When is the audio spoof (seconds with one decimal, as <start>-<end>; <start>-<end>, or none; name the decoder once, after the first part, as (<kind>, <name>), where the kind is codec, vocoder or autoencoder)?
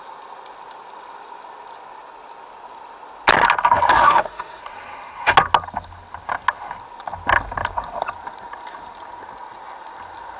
3.9-4.6 (autoencoder, DAC-VAE)